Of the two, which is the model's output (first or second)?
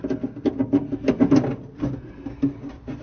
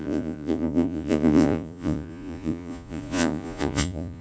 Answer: second